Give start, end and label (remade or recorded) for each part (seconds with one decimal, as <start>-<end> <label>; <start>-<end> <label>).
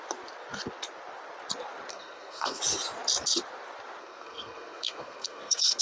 0.0-1.9 recorded; 1.9-2.6 remade; 2.6-4.0 recorded; 4.0-5.8 remade